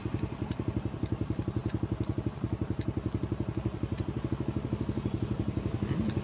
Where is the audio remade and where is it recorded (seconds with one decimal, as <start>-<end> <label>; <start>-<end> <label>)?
0.0-6.2 recorded